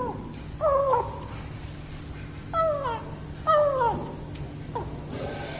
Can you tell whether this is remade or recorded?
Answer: recorded